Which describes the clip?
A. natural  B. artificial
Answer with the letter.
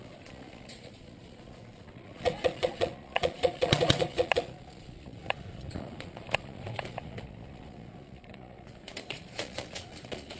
B